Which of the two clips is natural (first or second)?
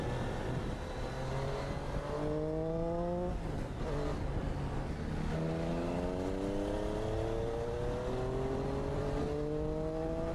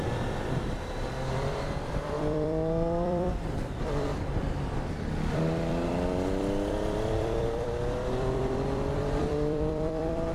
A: first